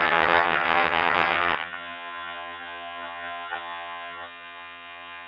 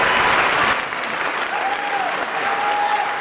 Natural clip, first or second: second